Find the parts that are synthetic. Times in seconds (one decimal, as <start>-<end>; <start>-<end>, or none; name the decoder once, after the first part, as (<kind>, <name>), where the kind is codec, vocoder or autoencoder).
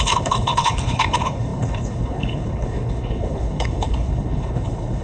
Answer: 0.0-5.0 (codec, HILCodec)